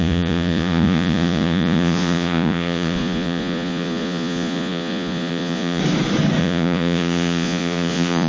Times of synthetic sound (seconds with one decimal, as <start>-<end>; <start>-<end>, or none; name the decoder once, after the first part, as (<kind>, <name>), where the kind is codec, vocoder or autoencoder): 0.0-5.8 (vocoder, Vocos); 6.4-8.3